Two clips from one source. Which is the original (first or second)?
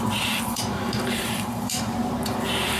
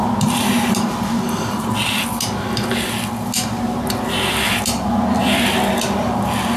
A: second